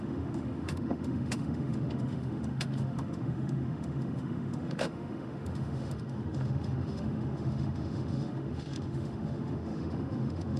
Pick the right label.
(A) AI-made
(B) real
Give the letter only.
A